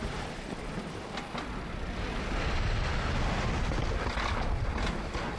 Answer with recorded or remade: recorded